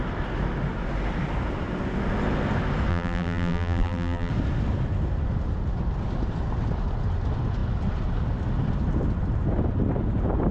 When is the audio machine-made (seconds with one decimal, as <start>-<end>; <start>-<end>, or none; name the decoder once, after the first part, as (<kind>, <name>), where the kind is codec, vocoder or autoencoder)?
2.9-4.3 (vocoder, BigVGAN v2)